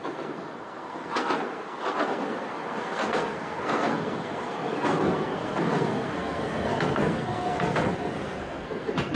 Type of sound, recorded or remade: remade